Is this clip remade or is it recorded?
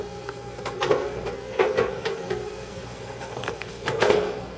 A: remade